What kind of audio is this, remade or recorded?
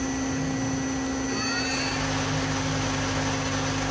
recorded